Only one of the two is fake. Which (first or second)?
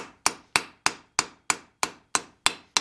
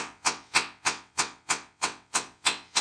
second